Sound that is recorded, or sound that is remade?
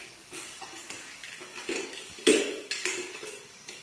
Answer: remade